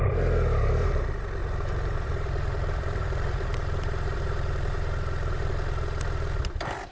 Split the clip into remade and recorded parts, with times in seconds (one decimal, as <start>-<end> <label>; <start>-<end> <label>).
0.0-1.4 recorded; 1.4-5.5 remade; 5.5-6.9 recorded